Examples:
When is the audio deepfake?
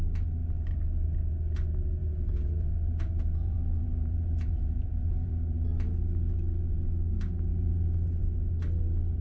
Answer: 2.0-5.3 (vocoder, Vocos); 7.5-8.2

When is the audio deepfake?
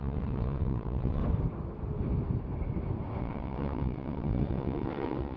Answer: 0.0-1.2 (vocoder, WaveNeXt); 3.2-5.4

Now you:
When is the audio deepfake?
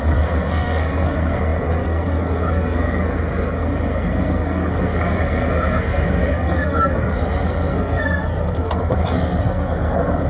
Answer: 0.0-10.3 (codec, SNAC)